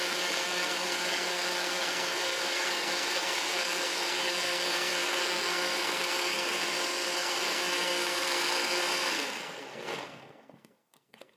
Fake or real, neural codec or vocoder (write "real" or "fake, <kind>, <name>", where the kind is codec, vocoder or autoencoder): fake, codec, SNAC